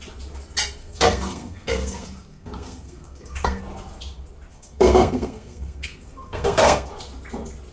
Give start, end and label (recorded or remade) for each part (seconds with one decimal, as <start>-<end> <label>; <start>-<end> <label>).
0.0-0.8 recorded; 0.8-3.6 remade; 3.6-4.5 recorded; 4.5-6.9 remade; 6.9-7.7 recorded